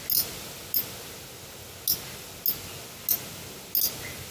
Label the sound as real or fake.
real